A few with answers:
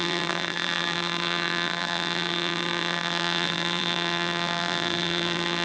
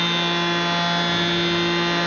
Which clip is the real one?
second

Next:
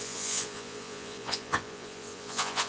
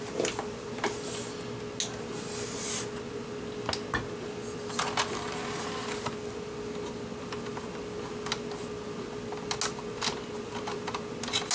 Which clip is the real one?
second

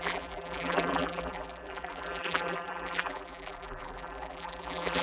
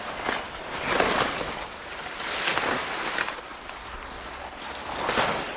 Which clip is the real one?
second